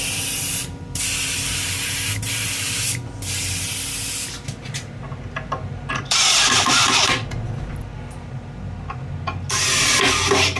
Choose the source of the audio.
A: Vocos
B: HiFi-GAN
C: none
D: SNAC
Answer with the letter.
C